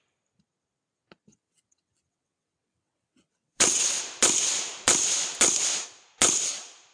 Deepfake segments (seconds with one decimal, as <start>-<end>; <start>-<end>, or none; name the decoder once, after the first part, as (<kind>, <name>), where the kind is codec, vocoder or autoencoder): 1.3-4.0 (vocoder, WaveNeXt)